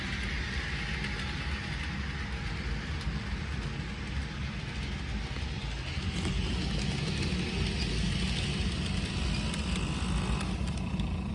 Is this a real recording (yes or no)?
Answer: yes